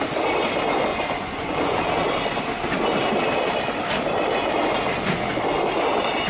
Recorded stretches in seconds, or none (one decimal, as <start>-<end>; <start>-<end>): 0.0-0.9; 1.8-6.3